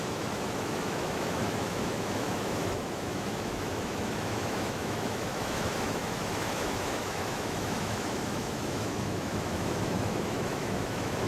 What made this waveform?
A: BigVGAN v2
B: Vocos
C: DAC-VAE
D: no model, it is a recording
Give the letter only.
C